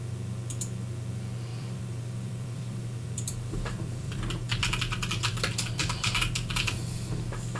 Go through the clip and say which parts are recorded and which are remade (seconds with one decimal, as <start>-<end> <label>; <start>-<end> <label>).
0.0-1.5 recorded; 1.5-4.8 remade; 4.8-5.8 recorded; 5.8-6.6 remade; 6.6-7.6 recorded